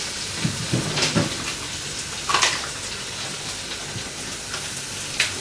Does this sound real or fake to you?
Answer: real